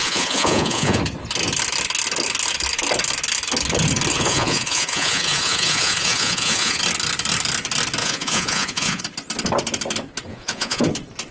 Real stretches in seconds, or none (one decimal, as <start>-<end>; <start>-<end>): 1.0-4.1; 6.8-8.0; 9.0-10.3; 10.8-11.3